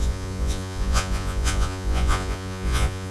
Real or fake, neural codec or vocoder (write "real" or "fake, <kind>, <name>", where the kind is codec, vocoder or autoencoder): fake, vocoder, Vocos